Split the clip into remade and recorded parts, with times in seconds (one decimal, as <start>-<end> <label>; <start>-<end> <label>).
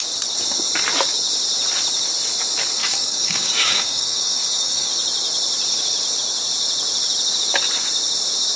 0.0-2.8 recorded; 2.8-4.9 remade; 4.9-8.6 recorded